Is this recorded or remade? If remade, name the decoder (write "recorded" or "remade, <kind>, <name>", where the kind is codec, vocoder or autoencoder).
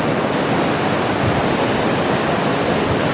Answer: recorded